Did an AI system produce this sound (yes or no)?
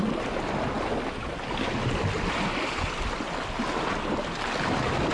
no